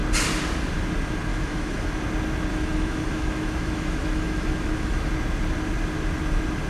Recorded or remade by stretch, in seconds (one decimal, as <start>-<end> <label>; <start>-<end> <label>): 0.0-1.3 recorded; 1.3-1.9 remade; 1.9-2.5 recorded; 2.5-5.1 remade; 5.1-6.7 recorded